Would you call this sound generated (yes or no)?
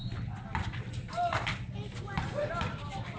no